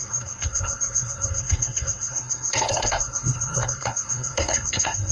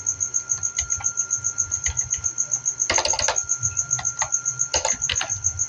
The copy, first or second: first